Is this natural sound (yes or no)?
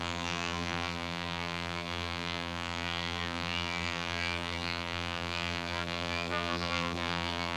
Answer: no